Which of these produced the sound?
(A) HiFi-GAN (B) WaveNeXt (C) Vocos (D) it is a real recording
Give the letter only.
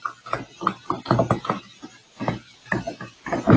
D